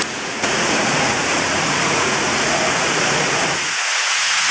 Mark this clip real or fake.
fake